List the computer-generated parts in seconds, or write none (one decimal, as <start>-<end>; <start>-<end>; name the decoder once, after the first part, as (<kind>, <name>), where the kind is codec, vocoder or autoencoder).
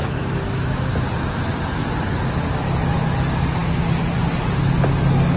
0.0-0.9 (autoencoder, DAC-VAE)